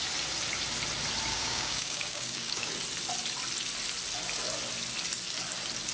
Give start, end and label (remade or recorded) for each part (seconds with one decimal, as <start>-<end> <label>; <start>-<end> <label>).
0.0-1.3 recorded; 1.3-2.7 remade; 2.7-5.9 recorded